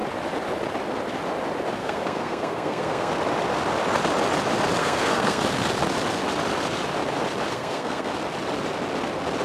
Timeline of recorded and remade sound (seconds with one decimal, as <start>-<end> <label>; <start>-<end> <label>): 0.0-1.8 recorded; 1.8-3.1 remade; 3.1-4.8 recorded; 4.8-5.4 remade; 5.4-7.5 recorded; 7.5-8.1 remade; 8.1-9.4 recorded